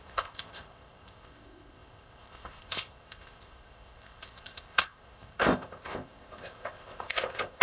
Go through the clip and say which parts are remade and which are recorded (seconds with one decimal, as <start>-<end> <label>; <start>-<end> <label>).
0.0-7.6 remade